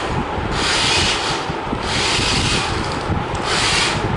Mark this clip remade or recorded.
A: recorded